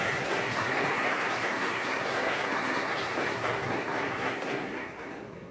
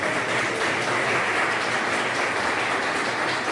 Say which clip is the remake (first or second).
first